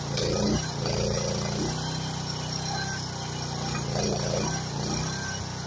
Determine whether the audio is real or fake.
real